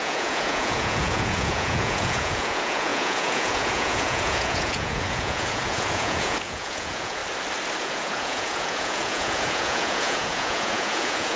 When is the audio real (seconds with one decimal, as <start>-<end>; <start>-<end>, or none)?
7.2-7.8